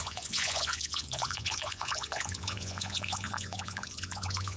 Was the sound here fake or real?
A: fake